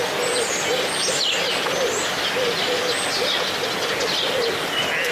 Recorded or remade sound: recorded